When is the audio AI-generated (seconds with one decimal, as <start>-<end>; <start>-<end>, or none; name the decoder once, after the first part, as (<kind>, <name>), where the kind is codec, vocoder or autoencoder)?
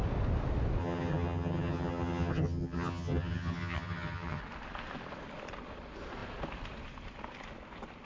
0.8-4.4 (vocoder, HiFi-GAN)